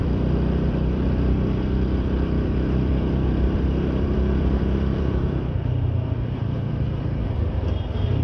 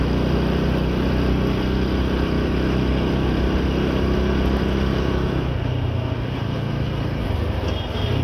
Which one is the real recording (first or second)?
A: second